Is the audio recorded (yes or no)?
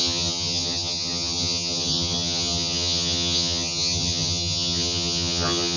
no